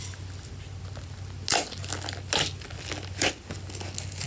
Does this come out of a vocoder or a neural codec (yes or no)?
no